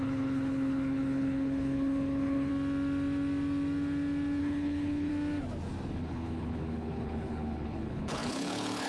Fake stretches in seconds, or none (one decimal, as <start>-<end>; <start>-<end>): 0.0-2.5; 4.4-5.1; 5.9-8.9